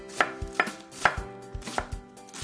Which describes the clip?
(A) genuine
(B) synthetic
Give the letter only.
A